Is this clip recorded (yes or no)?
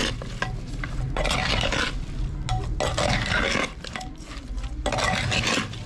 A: yes